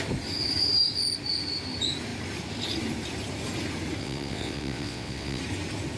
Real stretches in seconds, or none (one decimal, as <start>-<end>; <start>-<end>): 0.0-4.0; 5.4-6.0